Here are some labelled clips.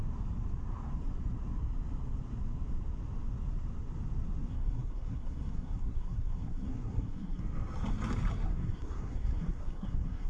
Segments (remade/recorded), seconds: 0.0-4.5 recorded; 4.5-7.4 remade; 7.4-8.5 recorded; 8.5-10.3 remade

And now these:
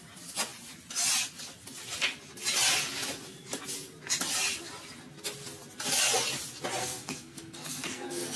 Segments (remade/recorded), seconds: 0.0-6.8 recorded; 6.8-8.4 remade

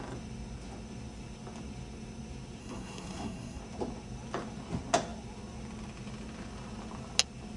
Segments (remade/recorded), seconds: 0.0-2.6 recorded; 2.6-3.6 remade; 3.6-7.6 recorded

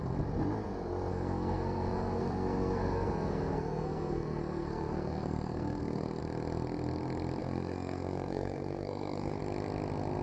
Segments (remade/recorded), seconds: 0.0-1.1 recorded; 1.1-6.2 remade; 6.2-7.4 recorded; 7.4-9.4 remade; 9.4-10.2 recorded

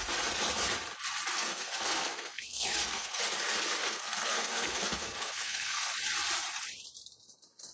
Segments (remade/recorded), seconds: 0.0-1.3 recorded; 1.3-3.2 remade; 3.2-3.8 recorded; 3.8-5.9 remade; 5.9-7.7 recorded

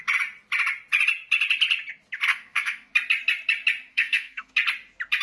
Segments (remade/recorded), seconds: 0.0-2.3 recorded; 2.3-2.9 remade; 2.9-3.9 recorded; 3.9-4.5 remade; 4.5-5.2 recorded

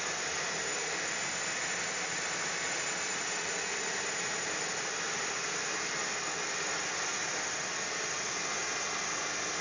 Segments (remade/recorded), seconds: 0.0-9.6 recorded

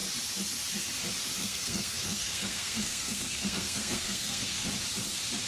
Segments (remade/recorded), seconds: 0.0-1.4 recorded; 1.4-4.7 remade; 4.7-5.5 recorded